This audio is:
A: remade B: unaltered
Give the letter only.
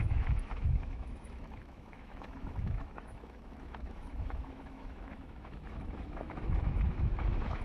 A